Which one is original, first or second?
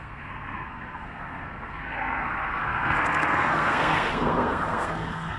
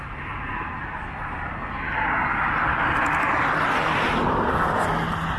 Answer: second